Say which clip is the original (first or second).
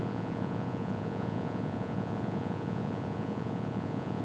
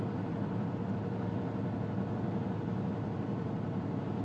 second